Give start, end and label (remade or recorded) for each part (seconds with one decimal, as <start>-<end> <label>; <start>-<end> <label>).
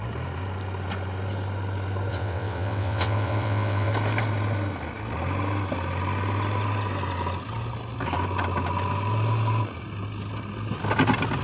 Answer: 0.0-2.1 recorded; 2.1-3.9 remade; 3.9-11.4 recorded